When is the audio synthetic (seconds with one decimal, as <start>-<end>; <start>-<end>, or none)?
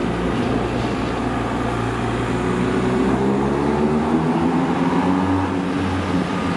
none